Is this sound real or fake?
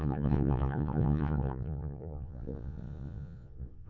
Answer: fake